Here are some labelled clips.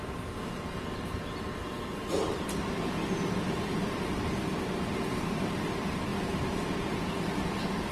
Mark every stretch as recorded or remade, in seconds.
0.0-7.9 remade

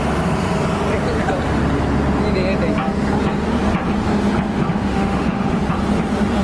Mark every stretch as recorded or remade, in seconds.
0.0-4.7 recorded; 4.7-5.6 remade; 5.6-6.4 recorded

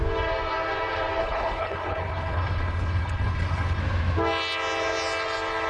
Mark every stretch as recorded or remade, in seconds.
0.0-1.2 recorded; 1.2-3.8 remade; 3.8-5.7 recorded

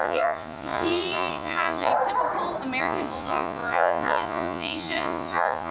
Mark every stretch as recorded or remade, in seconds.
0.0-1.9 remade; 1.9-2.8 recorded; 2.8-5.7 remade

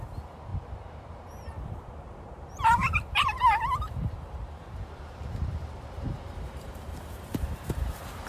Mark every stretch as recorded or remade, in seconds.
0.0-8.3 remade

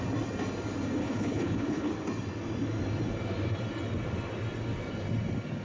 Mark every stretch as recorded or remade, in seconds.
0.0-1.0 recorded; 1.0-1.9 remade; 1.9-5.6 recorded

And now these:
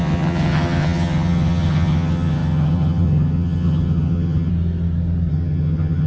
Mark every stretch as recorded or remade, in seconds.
0.0-4.5 remade; 4.5-5.3 recorded; 5.3-6.1 remade

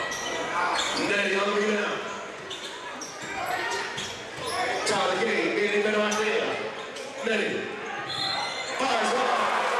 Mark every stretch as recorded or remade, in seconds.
0.0-9.8 remade